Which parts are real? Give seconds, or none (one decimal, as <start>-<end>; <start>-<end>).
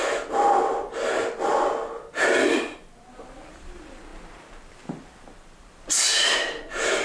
0.0-7.0